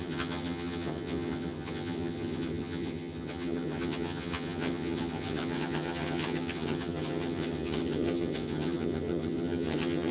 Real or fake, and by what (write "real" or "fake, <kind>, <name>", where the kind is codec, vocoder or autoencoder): fake, vocoder, HiFi-GAN